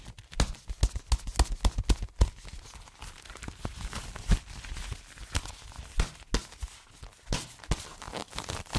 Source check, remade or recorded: recorded